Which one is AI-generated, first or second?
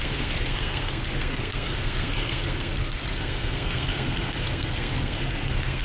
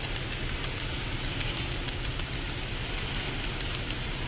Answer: first